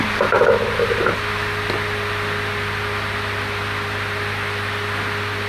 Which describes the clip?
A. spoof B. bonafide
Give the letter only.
B